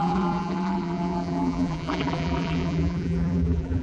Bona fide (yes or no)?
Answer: no